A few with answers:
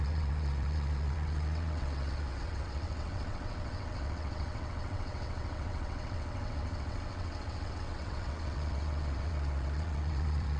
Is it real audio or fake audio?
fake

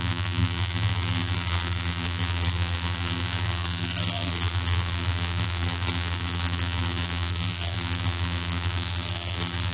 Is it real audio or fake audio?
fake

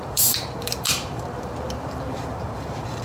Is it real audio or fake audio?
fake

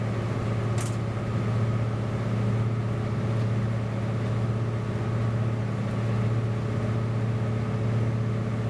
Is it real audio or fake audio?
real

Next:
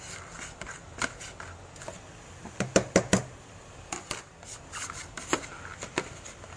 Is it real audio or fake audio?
real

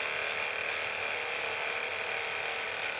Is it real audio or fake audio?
real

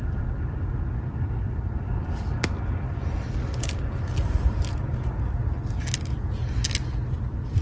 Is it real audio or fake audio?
real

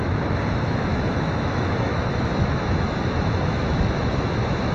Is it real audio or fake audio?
fake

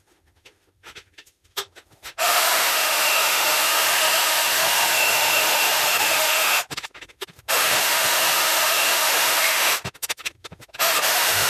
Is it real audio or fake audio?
fake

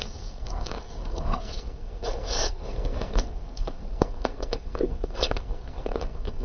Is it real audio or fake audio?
fake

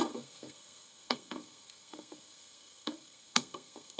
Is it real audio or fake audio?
fake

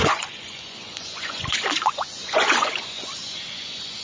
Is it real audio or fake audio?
fake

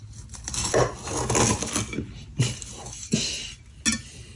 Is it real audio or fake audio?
real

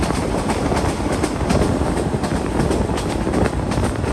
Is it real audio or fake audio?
real